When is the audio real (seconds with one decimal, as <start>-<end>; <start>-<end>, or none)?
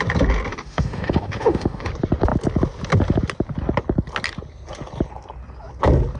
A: 0.0-0.5; 1.9-6.2